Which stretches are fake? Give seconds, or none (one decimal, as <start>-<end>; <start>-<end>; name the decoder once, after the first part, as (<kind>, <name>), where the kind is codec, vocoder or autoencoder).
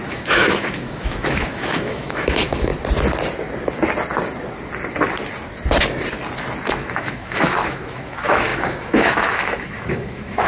0.0-2.7 (autoencoder, DAC-VAE); 6.8-10.5